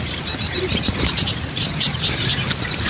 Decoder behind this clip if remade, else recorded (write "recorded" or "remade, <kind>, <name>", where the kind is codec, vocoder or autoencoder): remade, vocoder, BigVGAN v2